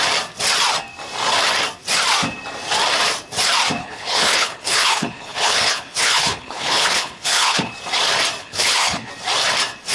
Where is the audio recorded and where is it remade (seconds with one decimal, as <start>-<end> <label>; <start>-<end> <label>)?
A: 0.0-3.8 recorded; 3.8-7.7 remade; 7.7-8.4 recorded; 8.4-9.1 remade; 9.1-9.9 recorded